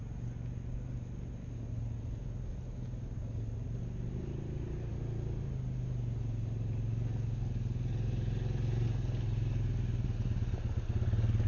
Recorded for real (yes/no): yes